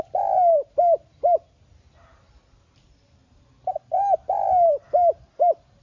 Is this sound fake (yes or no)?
no